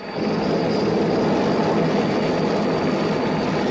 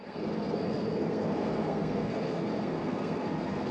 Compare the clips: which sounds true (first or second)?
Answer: first